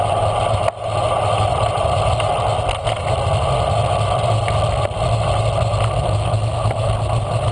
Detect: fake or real real